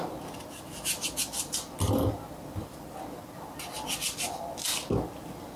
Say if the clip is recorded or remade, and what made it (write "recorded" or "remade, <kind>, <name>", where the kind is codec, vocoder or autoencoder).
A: recorded